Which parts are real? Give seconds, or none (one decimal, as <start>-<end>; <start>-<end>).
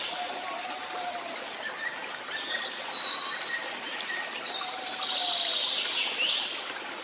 0.0-7.0